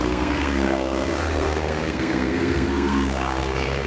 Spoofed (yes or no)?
yes